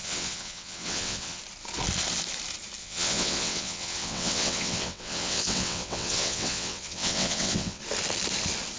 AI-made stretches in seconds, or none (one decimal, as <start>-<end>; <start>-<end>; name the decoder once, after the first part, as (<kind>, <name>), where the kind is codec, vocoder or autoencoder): 0.0-1.4 (vocoder, WaveNeXt); 2.8-7.8